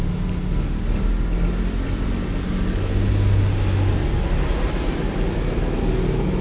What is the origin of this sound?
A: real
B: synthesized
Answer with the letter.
A